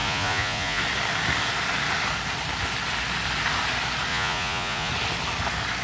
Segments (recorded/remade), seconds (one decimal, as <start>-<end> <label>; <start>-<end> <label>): 0.0-0.8 remade; 0.8-4.1 recorded; 4.1-4.9 remade; 4.9-5.8 recorded